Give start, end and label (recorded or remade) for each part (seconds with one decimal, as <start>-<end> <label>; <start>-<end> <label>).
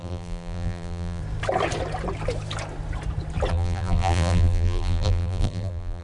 0.0-1.2 remade; 1.2-3.5 recorded; 3.5-6.0 remade